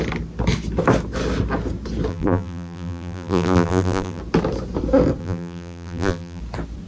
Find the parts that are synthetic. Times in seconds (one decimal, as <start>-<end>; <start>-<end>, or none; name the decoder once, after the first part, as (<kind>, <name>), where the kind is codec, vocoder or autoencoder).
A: 2.1-4.2 (vocoder, BigVGAN v2); 5.2-6.4